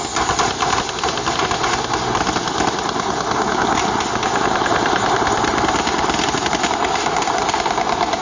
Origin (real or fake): real